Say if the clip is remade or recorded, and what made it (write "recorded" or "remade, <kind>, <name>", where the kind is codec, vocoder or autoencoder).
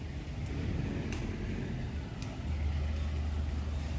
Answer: recorded